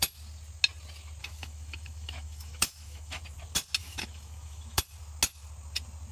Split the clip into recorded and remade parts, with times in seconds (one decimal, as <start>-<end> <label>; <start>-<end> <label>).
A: 0.0-1.2 recorded; 1.2-3.2 remade; 3.2-3.8 recorded; 3.8-4.8 remade; 4.8-6.1 recorded